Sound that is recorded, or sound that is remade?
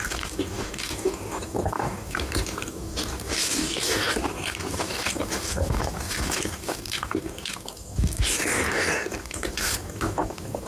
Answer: remade